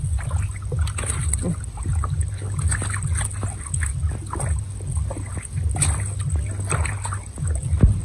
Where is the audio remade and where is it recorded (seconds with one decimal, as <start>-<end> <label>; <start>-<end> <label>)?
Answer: 0.0-8.0 recorded